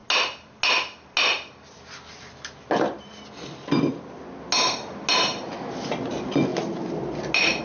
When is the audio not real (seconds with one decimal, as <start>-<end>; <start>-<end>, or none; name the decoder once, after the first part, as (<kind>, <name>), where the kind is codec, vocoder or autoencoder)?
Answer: 5.3-5.8 (vocoder, BigVGAN v2)